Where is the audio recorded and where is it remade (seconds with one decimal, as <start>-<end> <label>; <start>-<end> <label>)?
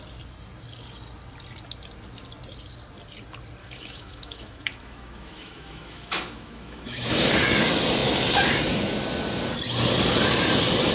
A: 0.0-3.6 recorded; 3.6-7.3 remade; 7.3-10.9 recorded